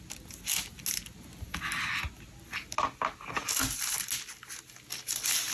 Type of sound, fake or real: real